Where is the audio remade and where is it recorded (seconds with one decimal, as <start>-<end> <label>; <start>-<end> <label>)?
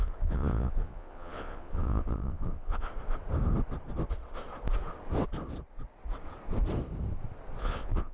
0.0-2.9 remade; 2.9-7.6 recorded; 7.6-8.1 remade